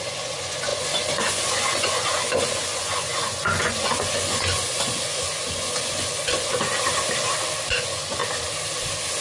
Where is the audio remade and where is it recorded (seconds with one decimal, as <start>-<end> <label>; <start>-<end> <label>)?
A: 0.0-6.7 remade; 6.7-7.7 recorded; 7.7-8.2 remade; 8.2-9.2 recorded